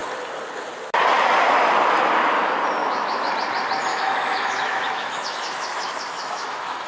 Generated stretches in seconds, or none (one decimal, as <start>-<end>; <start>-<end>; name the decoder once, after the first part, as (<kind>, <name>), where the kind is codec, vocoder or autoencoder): 2.8-3.3 (autoencoder, DAC-VAE); 3.9-6.9